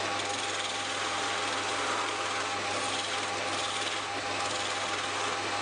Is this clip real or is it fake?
real